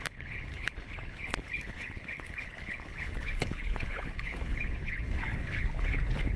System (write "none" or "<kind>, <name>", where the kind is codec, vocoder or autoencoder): codec, HILCodec